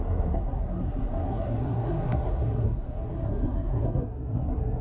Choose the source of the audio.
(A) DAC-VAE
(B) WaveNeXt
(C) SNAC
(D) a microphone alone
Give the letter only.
C